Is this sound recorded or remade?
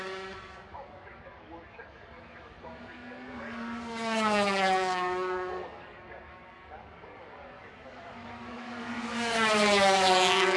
remade